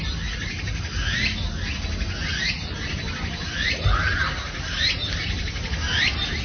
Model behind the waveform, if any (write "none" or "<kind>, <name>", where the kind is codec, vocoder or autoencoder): none